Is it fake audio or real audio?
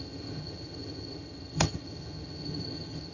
fake